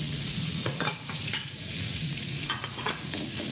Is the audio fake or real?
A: fake